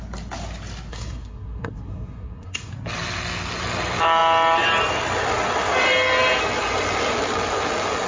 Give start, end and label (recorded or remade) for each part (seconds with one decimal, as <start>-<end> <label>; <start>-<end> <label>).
0.0-0.9 recorded; 0.9-2.7 remade; 2.7-8.1 recorded